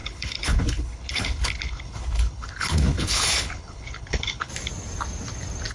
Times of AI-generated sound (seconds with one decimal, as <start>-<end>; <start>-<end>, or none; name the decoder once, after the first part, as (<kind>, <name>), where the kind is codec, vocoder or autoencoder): 0.0-4.5 (codec, HILCodec)